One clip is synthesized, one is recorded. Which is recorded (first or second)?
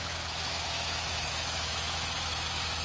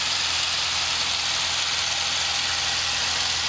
second